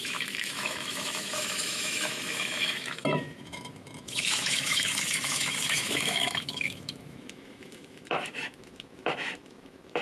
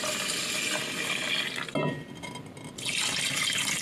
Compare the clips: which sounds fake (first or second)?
first